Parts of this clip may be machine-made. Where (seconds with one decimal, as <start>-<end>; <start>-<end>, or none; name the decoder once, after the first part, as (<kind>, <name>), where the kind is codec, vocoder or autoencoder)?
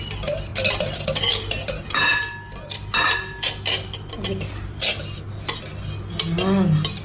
none